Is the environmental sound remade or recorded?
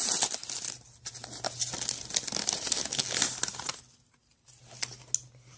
recorded